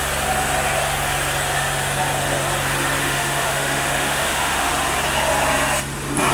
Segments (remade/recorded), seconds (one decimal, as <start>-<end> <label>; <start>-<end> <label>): 0.0-3.0 recorded; 3.0-4.7 remade; 4.7-6.3 recorded